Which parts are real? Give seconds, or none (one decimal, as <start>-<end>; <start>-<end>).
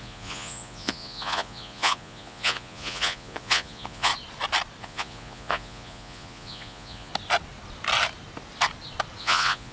4.1-4.8; 7.1-9.2